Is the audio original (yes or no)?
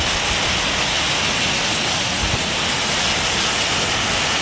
yes